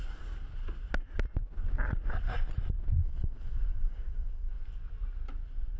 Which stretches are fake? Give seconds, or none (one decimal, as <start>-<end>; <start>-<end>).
3.0-4.5